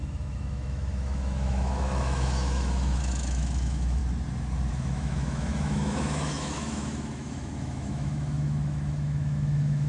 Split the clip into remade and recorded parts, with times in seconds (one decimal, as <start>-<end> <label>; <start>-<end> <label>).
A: 0.0-4.0 remade; 4.0-4.7 recorded; 4.7-9.9 remade